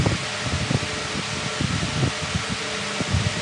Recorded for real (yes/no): yes